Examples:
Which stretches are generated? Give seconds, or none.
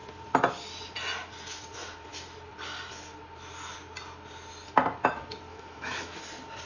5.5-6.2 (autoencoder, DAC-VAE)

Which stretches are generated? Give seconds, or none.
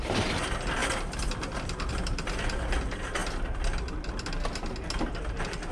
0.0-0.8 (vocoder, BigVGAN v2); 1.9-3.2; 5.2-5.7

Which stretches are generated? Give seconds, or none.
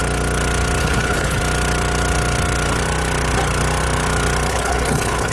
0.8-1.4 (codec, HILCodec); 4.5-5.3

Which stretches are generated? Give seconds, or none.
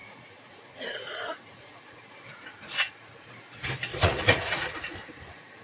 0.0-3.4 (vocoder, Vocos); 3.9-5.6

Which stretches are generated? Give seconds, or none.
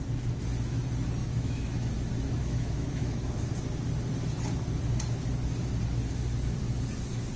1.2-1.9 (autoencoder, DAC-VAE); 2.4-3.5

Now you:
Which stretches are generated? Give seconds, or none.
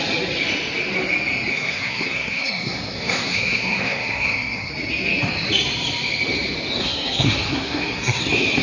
1.5-4.7 (codec, SNAC); 6.8-8.2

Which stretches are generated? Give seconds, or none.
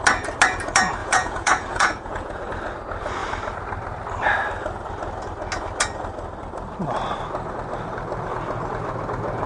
1.0-2.4 (vocoder, Vocos)